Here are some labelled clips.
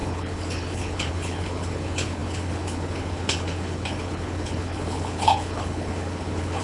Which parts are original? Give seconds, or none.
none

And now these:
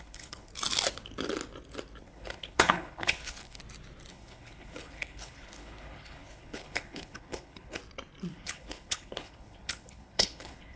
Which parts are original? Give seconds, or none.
0.5-2.0; 3.6-4.1; 7.8-8.3

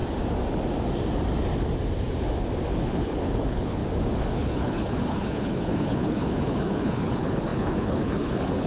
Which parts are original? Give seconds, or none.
0.0-2.7; 3.8-4.3

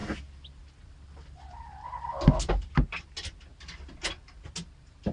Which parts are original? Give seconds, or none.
0.0-5.1